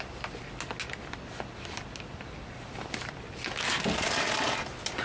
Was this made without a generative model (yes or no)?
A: yes